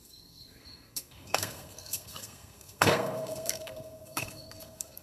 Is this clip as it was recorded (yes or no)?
no